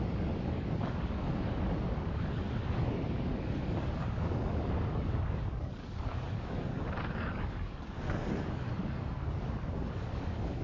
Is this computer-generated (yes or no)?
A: yes